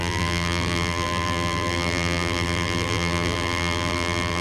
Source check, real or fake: fake